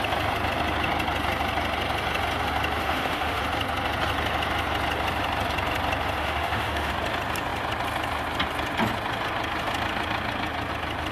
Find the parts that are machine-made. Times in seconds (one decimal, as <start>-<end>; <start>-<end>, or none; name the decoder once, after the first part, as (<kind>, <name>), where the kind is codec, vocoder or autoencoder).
2.8-3.4 (autoencoder, DAC-VAE); 6.2-6.9